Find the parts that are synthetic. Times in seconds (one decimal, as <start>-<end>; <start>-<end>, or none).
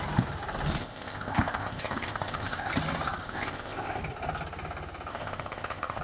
0.8-2.7; 3.2-4.0; 5.1-6.0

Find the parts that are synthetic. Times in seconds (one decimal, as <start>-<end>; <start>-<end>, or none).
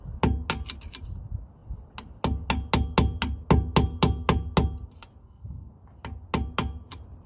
5.2-5.7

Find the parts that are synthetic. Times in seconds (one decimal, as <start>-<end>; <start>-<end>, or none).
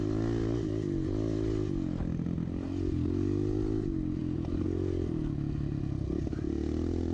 none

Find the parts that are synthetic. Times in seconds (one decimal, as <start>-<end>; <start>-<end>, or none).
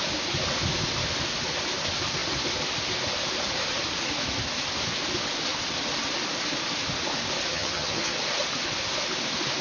7.5-8.1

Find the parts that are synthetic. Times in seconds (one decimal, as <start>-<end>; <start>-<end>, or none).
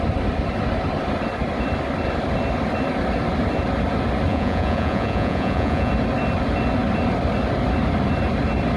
4.3-5.9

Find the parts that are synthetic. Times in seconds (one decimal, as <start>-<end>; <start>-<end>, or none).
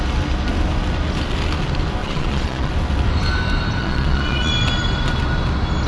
2.0-2.7; 3.8-4.5